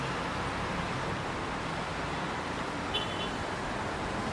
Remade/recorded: recorded